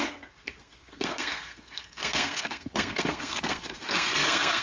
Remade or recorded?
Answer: remade